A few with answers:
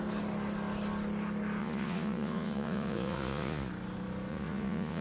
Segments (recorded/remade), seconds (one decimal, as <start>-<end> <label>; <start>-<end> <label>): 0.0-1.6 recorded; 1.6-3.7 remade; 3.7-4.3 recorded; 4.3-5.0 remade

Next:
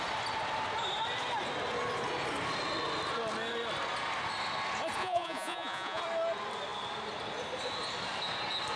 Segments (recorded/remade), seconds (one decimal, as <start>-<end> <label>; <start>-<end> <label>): 0.0-5.0 recorded; 5.0-6.0 remade; 6.0-8.8 recorded

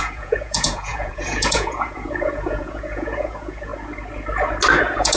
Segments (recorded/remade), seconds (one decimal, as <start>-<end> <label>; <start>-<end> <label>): 0.0-3.7 remade; 3.7-4.8 recorded; 4.8-5.2 remade

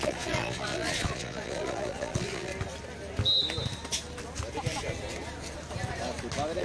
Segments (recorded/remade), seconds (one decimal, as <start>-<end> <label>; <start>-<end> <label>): 0.0-2.5 remade; 2.5-6.6 recorded